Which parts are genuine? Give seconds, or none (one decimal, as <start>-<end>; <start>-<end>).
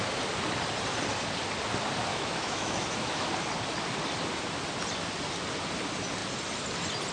0.0-2.1; 3.3-7.1